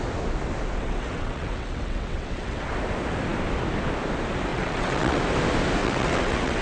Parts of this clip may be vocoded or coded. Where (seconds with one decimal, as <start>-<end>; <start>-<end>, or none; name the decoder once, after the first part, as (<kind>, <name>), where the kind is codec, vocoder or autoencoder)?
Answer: 0.8-2.7 (vocoder, WaveNeXt); 4.5-5.2; 5.8-6.6